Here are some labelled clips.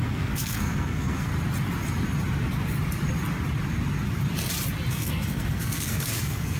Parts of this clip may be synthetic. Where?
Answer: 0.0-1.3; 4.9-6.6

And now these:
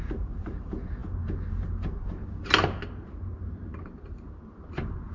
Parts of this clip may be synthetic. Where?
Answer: none

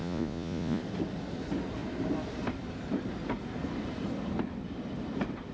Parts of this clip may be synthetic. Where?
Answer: 0.0-0.8

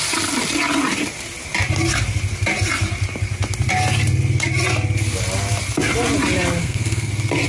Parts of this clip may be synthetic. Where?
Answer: 6.6-7.1

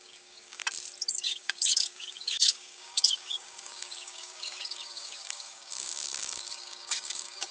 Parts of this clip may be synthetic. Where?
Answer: 0.0-0.6; 1.1-7.5

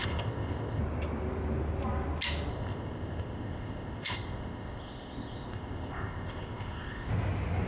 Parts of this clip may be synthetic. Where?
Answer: 0.0-0.8; 2.5-7.1

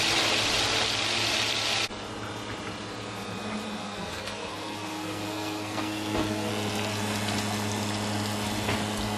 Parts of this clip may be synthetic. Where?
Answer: 3.8-6.5

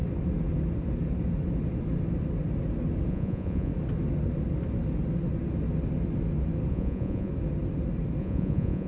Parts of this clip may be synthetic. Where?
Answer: 3.1-3.7; 6.7-7.3; 8.2-8.9